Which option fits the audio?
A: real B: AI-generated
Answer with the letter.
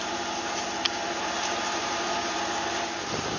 B